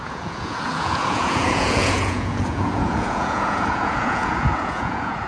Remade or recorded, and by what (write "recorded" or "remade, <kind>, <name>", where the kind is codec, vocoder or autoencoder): remade, vocoder, Vocos